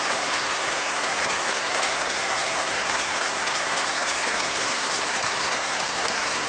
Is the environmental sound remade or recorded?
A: remade